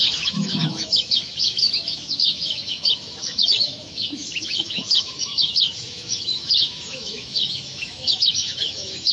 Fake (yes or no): yes